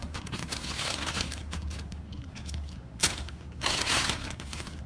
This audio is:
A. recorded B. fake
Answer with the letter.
B